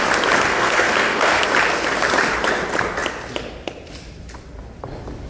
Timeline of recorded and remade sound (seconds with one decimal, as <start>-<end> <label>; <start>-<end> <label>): 0.0-0.5 recorded; 0.5-1.4 remade; 1.4-5.3 recorded